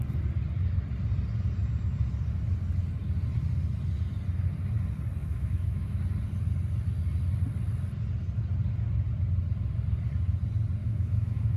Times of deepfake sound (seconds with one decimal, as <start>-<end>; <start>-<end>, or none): 5.2-6.0; 10.8-11.6